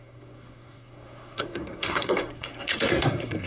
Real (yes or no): no